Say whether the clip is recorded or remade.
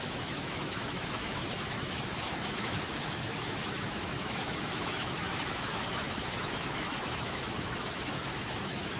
remade